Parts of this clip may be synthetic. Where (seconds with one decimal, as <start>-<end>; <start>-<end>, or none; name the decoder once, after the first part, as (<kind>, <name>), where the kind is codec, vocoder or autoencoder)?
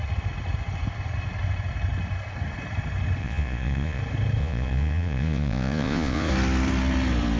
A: 3.2-4.0 (vocoder, Vocos); 4.4-6.3